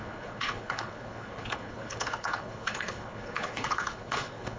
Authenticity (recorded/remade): remade